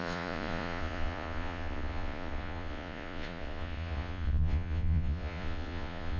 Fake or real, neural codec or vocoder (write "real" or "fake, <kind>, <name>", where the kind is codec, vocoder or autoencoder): fake, vocoder, Vocos